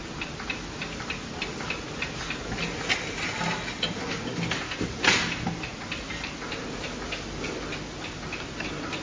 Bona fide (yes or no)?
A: yes